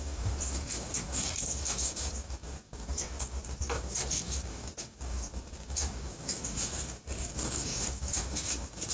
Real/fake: fake